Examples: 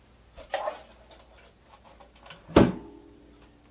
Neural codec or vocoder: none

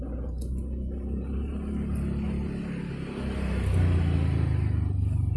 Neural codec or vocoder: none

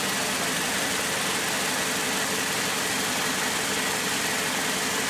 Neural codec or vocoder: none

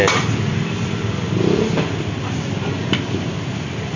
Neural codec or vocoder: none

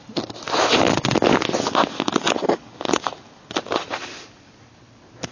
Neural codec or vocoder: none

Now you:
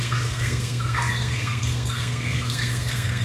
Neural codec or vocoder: codec, SNAC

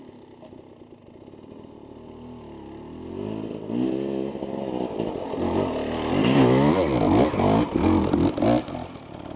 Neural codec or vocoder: none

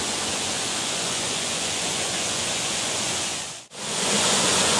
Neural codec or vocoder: vocoder, Vocos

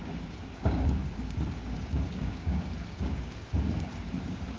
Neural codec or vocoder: codec, DAC